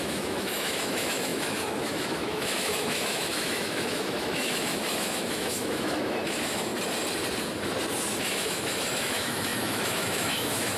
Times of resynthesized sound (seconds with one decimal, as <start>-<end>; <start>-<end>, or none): 0.0-6.7; 8.2-10.8